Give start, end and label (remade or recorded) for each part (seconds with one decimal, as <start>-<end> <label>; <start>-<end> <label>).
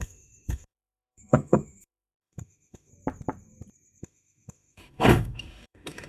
0.0-2.9 remade; 2.9-4.0 recorded; 4.0-6.1 remade